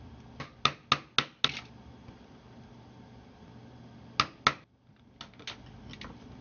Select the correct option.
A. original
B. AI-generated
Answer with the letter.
A